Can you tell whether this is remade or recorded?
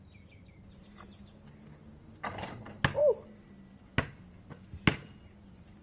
recorded